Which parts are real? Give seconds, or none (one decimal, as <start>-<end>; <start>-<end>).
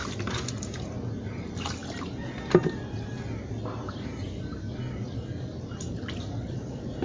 0.0-7.0